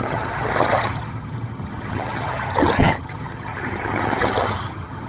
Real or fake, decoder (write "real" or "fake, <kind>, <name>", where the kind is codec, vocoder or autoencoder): fake, vocoder, HiFi-GAN